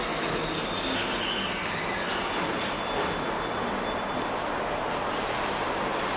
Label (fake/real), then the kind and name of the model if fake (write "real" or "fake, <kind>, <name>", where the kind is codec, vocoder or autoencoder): real